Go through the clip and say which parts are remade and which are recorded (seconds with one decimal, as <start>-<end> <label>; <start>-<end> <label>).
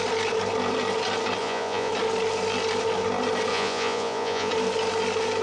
0.0-1.4 recorded; 1.4-1.9 remade; 1.9-3.5 recorded; 3.5-4.5 remade; 4.5-5.4 recorded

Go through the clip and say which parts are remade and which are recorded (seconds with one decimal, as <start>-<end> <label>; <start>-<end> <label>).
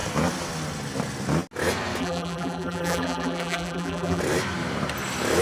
0.0-2.0 recorded; 2.0-4.2 remade; 4.2-5.4 recorded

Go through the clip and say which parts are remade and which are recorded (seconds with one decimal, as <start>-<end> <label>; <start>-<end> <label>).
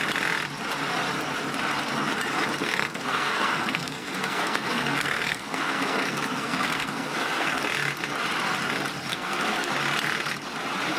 0.0-2.6 recorded; 2.6-7.6 remade; 7.6-9.1 recorded; 9.1-9.7 remade; 9.7-11.0 recorded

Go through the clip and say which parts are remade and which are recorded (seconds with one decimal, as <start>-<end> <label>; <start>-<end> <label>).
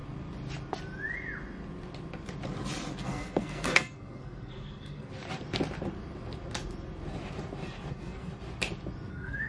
0.0-3.0 recorded; 3.0-5.1 remade; 5.1-7.9 recorded; 7.9-8.3 remade; 8.3-9.1 recorded; 9.1-9.5 remade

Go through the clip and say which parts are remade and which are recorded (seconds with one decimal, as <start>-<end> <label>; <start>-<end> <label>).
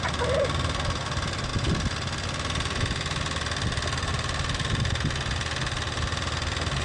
0.0-6.8 recorded